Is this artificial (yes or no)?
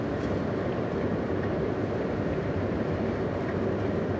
no